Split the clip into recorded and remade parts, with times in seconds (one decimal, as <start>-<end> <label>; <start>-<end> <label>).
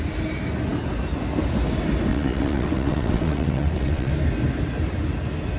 0.0-2.1 recorded; 2.1-4.1 remade; 4.1-5.6 recorded